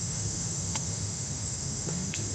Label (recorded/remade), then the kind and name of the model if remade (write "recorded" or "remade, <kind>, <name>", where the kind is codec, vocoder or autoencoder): remade, autoencoder, DAC-VAE